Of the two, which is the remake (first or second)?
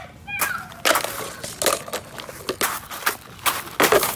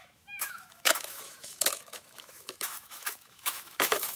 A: second